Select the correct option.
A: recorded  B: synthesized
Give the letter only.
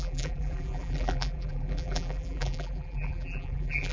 B